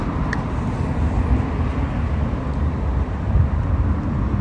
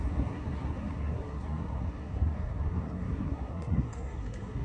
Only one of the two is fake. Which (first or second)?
second